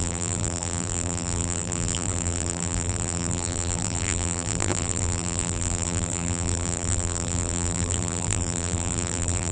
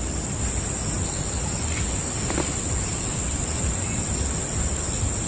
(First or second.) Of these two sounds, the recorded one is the second